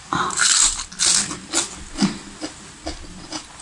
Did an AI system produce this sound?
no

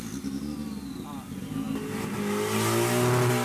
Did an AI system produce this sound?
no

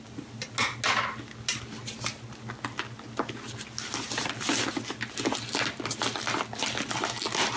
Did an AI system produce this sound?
no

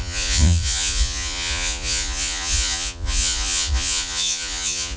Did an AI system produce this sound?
yes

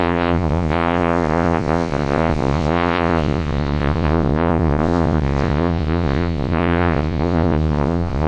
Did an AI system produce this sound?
yes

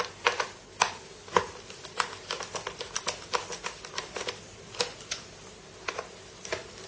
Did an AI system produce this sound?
no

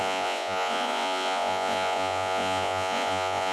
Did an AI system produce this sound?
yes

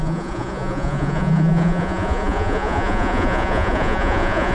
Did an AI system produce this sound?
yes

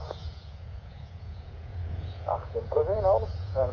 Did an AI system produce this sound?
yes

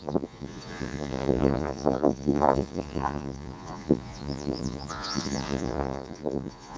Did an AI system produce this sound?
yes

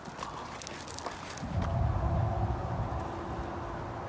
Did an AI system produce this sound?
no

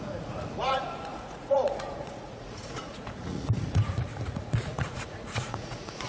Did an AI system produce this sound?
yes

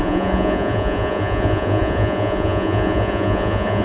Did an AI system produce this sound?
yes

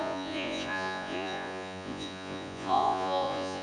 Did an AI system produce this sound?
yes